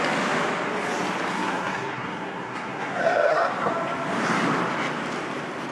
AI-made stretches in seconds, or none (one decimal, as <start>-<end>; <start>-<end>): 1.3-3.7